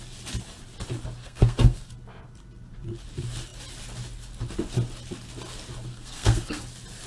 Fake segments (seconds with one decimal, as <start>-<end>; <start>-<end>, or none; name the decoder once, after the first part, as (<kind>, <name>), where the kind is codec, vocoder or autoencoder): 1.2-1.9 (codec, SNAC); 5.9-6.6